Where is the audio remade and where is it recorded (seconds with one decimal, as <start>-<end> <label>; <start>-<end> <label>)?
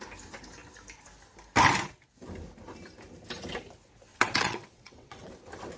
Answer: 0.0-4.1 recorded; 4.1-5.3 remade; 5.3-5.8 recorded